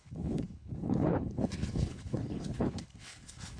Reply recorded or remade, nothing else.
remade